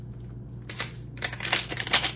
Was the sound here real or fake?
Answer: real